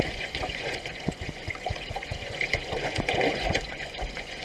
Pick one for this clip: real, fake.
fake